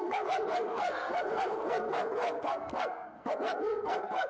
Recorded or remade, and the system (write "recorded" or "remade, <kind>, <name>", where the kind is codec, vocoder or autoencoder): remade, codec, SNAC